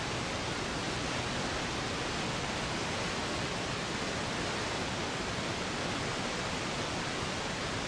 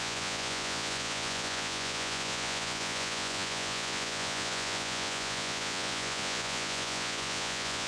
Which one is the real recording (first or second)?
first